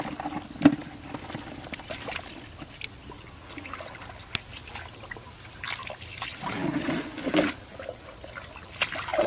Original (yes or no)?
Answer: yes